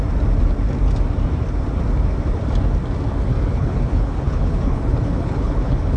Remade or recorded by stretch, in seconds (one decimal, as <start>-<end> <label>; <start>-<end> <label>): 0.0-3.3 recorded; 3.3-6.0 remade